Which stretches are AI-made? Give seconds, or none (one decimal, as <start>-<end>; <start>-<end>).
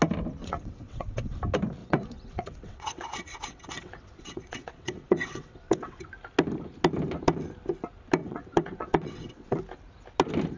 0.4-1.4; 1.8-6.1; 8.2-9.6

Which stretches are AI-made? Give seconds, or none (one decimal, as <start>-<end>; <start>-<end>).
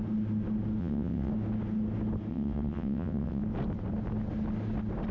0.8-1.3; 2.3-3.4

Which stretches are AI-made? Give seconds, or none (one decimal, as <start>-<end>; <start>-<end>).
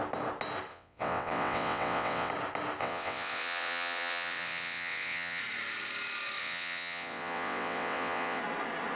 0.7-2.3; 2.8-5.4; 6.4-8.4